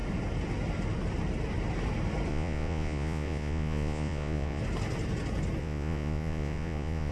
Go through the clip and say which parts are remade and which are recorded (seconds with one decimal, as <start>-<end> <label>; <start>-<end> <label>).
0.0-2.3 recorded; 2.3-4.6 remade; 4.6-5.6 recorded; 5.6-7.1 remade